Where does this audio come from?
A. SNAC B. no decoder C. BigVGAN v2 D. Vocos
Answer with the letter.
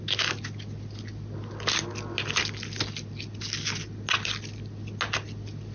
B